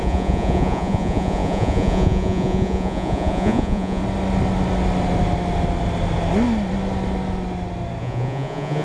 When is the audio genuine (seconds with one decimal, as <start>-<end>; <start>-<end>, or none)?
4.0-8.0